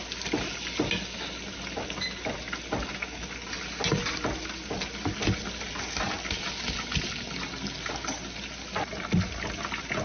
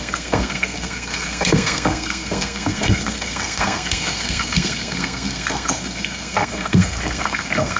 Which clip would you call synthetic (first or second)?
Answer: second